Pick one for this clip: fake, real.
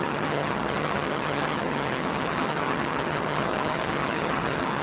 fake